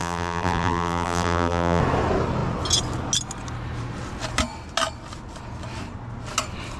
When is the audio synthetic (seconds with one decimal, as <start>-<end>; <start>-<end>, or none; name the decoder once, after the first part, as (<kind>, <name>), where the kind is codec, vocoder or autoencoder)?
0.0-1.8 (vocoder, BigVGAN v2)